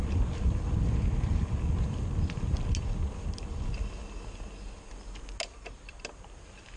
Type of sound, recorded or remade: recorded